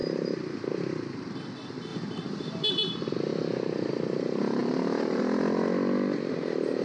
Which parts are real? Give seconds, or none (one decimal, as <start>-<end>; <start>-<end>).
0.7-1.9; 2.8-4.6; 5.2-6.8